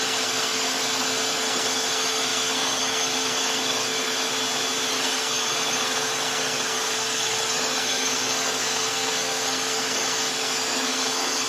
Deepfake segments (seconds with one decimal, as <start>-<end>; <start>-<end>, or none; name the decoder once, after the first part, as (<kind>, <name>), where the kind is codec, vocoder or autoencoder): 0.0-4.3 (codec, SNAC); 4.9-11.5